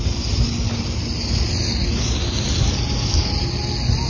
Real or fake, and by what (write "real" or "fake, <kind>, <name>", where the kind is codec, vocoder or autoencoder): real